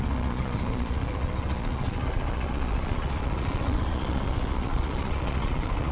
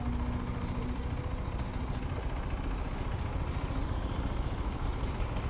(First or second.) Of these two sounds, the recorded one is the second